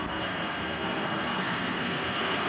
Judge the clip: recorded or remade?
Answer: remade